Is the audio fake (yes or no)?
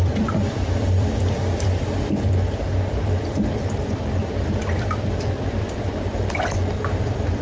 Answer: yes